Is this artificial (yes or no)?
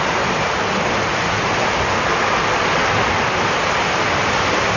no